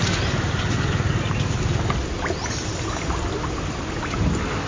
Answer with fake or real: real